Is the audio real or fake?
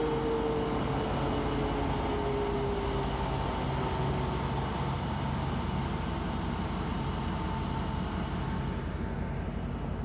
real